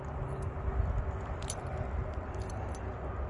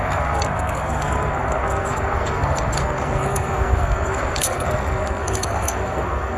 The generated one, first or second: second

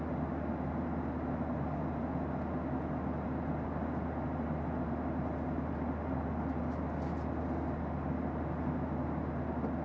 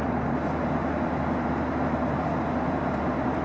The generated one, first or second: second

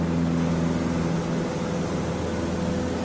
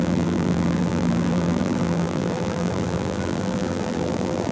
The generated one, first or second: second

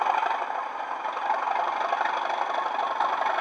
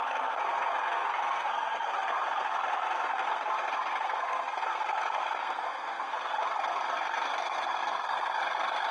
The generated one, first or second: second